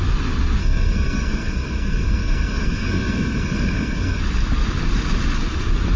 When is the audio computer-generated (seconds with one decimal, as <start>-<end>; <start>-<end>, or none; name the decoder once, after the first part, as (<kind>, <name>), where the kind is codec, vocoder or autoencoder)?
0.6-4.2 (codec, SNAC)

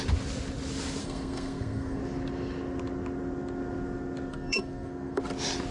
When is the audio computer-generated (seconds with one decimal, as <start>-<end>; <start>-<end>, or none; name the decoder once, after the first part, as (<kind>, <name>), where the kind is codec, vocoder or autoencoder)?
1.0-2.0 (codec, SNAC); 4.3-5.2